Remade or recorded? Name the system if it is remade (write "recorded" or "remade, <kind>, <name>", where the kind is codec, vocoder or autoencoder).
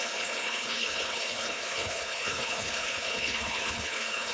remade, codec, HILCodec